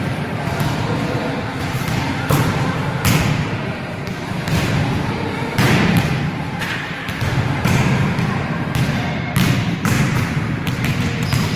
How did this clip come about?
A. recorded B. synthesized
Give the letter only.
B